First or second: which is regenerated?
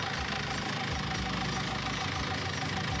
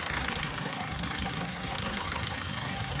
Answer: second